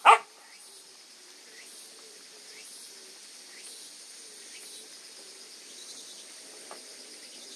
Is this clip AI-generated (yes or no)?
no